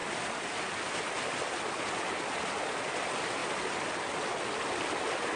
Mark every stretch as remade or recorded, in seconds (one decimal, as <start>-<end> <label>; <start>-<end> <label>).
0.0-5.4 recorded